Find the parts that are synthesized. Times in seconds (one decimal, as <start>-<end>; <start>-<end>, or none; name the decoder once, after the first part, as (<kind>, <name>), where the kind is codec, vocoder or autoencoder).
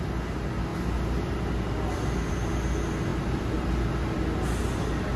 none